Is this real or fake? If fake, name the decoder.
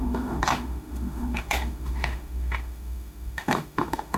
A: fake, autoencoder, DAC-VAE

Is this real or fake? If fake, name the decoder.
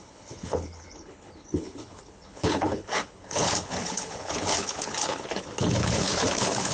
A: fake, codec, HILCodec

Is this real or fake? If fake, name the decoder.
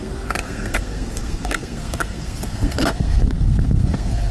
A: fake, codec, SNAC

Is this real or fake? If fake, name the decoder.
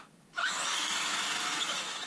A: fake, autoencoder, DAC-VAE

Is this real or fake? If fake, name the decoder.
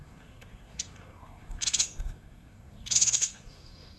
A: fake, codec, SNAC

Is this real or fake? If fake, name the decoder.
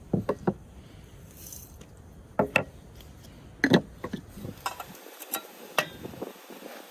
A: real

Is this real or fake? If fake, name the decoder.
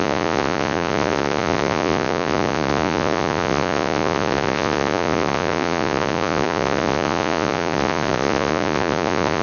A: fake, vocoder, Vocos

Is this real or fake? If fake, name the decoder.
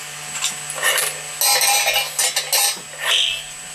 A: real